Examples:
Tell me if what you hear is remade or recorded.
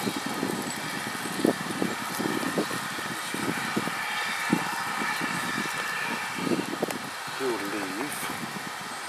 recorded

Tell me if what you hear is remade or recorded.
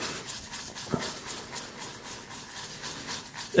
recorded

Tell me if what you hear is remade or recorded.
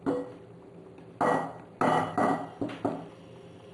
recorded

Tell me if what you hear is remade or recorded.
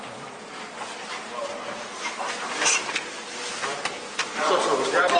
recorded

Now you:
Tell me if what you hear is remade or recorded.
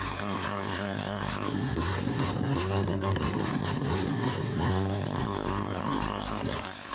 remade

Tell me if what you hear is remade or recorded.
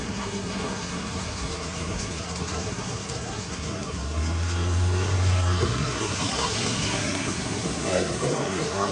remade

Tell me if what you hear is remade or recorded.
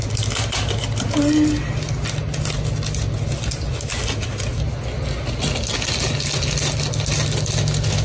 recorded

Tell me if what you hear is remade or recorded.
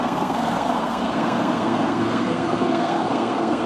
remade